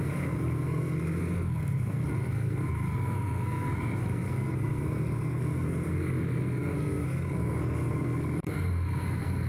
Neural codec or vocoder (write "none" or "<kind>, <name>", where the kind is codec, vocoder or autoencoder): codec, SNAC